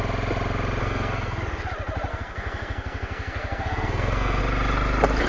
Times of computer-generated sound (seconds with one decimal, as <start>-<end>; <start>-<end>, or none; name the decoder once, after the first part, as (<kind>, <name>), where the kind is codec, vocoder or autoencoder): 0.8-1.4 (codec, SNAC); 2.1-4.4